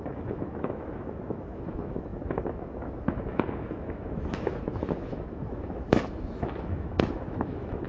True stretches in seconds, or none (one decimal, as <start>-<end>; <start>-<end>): none